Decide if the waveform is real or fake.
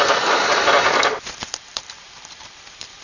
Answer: fake